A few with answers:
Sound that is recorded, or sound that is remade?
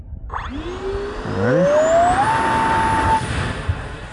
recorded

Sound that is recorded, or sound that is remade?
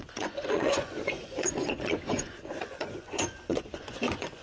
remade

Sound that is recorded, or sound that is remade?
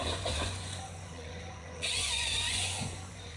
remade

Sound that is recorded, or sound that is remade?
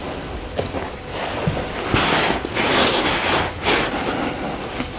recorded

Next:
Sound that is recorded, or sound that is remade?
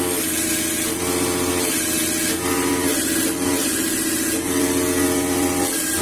recorded